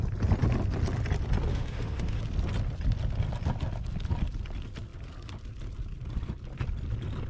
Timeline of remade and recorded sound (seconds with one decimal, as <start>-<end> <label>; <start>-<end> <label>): 0.0-1.5 recorded; 1.5-2.2 remade; 2.2-7.3 recorded